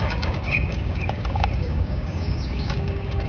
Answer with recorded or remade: remade